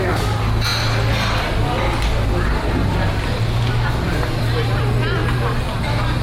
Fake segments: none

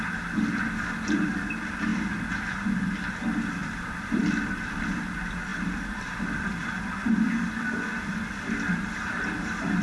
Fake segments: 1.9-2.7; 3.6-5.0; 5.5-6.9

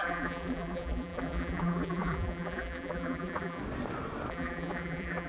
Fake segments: 0.0-3.6; 4.3-5.3

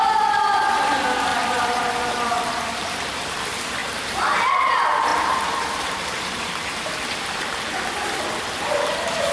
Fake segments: 1.3-3.2; 3.8-4.5; 5.1-8.3

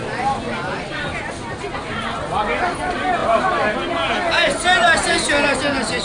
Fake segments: none

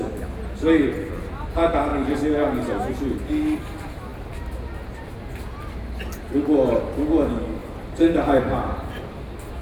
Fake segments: 7.6-8.9